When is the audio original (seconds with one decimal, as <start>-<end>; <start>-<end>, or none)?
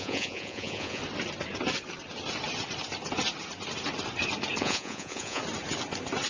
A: 1.0-4.6; 5.4-6.3